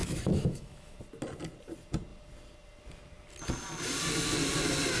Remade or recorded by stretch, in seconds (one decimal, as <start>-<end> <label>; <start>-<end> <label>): 0.0-1.0 remade; 1.0-5.0 recorded